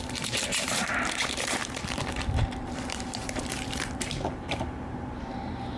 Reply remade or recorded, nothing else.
remade